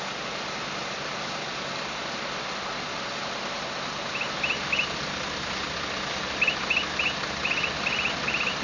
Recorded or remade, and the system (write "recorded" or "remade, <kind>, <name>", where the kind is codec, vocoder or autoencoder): recorded